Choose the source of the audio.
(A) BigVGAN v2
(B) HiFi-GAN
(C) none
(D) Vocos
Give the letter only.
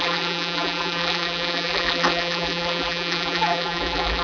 A